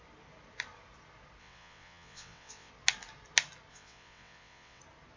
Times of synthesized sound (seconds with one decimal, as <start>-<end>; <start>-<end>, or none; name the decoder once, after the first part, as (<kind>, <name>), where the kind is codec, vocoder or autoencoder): 1.4-2.7 (vocoder, WaveNeXt); 3.7-4.8